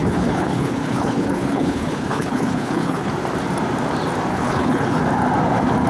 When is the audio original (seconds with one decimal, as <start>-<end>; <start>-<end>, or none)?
3.1-4.3; 5.0-5.9